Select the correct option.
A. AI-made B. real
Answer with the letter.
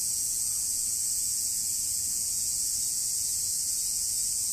A